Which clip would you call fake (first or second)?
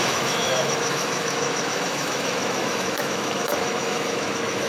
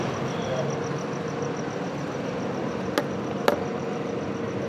first